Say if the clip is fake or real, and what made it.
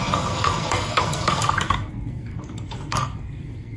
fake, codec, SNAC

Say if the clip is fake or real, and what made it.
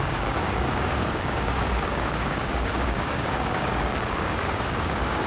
fake, codec, DAC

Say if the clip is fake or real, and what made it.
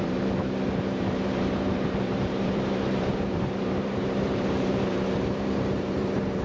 fake, vocoder, BigVGAN v2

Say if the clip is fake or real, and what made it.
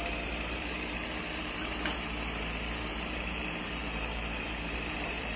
fake, vocoder, BigVGAN v2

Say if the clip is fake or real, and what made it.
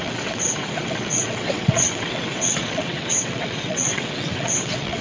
fake, vocoder, WaveNeXt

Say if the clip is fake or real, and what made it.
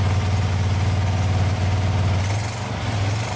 real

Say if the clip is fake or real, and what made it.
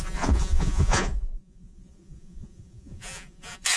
fake, vocoder, Vocos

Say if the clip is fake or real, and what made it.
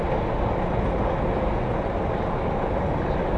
real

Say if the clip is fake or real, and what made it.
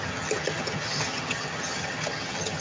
fake, vocoder, HiFi-GAN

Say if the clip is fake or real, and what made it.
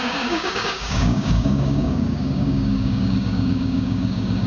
fake, codec, DAC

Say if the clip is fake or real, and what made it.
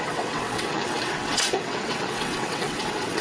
fake, vocoder, WaveNeXt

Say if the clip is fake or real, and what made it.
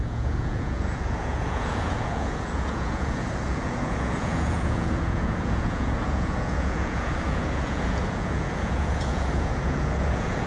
fake, vocoder, Vocos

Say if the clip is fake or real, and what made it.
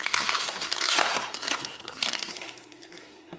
fake, codec, SNAC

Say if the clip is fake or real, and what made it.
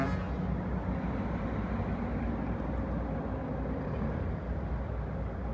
real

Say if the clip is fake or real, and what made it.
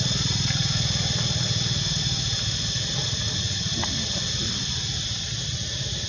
real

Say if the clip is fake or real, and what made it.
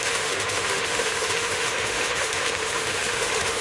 fake, autoencoder, DAC-VAE